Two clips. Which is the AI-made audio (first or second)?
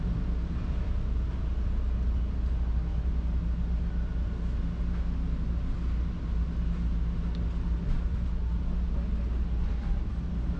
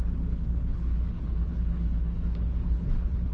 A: second